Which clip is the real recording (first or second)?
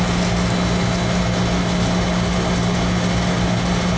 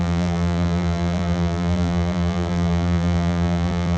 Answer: first